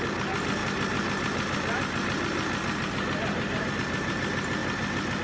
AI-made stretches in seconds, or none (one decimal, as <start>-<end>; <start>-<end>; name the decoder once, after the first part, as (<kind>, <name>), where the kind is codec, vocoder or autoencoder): none